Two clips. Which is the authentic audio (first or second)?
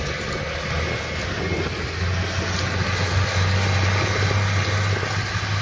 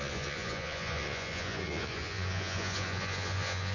first